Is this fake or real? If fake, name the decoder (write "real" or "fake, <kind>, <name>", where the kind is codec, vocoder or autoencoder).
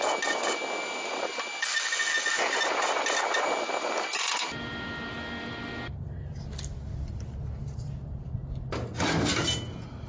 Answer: real